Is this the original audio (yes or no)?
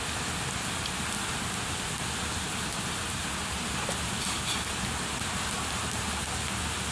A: yes